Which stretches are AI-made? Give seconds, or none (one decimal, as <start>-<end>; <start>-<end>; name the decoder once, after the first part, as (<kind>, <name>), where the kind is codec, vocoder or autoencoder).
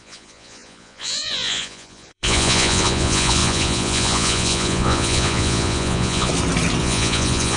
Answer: 0.0-6.3 (vocoder, Vocos); 6.8-7.6